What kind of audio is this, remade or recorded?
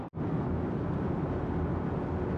recorded